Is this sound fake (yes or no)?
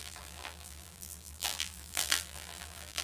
yes